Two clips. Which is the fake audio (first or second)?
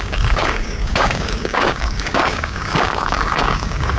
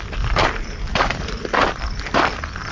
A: first